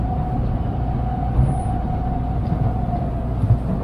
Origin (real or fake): real